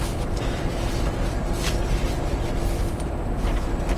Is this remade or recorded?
recorded